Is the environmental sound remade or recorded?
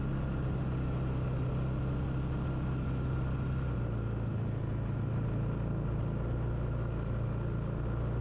recorded